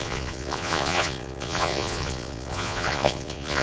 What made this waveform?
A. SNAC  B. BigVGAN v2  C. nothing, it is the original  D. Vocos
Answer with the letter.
D